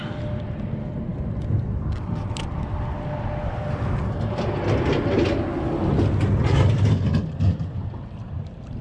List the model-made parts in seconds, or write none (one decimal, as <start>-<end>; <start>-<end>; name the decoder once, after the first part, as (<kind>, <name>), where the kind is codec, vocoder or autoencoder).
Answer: none